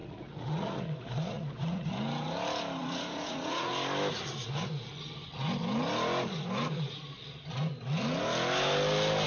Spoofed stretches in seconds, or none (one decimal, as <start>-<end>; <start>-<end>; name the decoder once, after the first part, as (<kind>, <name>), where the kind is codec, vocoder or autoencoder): 0.0-1.9 (vocoder, Vocos); 2.8-3.7